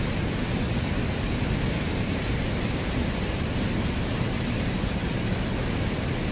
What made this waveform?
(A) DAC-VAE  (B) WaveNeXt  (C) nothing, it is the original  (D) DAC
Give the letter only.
C